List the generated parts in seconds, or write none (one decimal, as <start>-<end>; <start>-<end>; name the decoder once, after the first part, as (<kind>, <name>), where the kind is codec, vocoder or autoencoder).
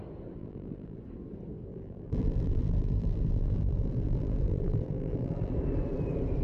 0.4-1.0 (vocoder, BigVGAN v2); 1.7-5.5